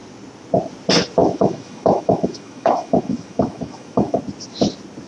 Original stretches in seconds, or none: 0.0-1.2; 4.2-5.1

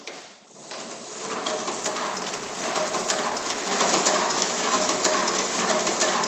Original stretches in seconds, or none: 0.0-0.6; 1.3-3.4; 5.5-6.3

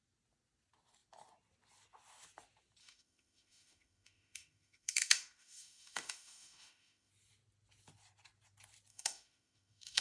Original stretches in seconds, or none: 0.0-2.8; 7.1-8.9

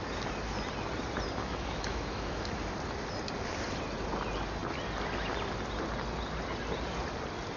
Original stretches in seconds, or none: 0.0-1.4; 2.5-7.6

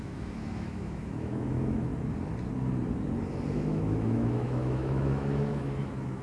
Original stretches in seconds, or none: 1.9-3.5

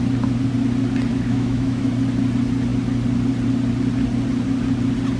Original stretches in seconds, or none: 0.0-1.1; 1.9-5.2

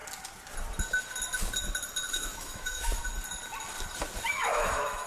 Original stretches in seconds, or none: 0.0-2.1; 3.0-4.3